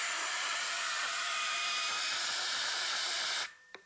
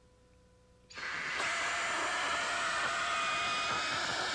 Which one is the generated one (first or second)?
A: first